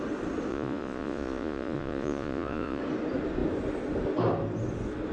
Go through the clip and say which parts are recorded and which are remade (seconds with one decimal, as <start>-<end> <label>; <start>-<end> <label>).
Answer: 0.0-0.5 recorded; 0.5-2.8 remade; 2.8-5.1 recorded